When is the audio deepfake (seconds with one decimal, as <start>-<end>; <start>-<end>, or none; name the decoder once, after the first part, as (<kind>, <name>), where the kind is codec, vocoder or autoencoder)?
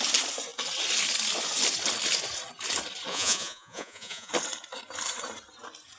3.1-4.3 (vocoder, Vocos)